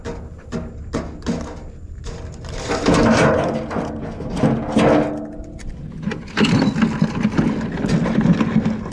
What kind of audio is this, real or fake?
real